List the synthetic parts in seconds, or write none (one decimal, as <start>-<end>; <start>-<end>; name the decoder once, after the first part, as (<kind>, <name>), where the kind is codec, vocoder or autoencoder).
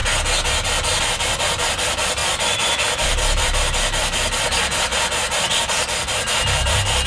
1.0-4.9 (vocoder, BigVGAN v2); 5.6-7.1